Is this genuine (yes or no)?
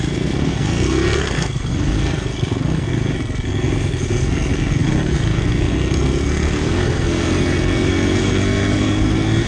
no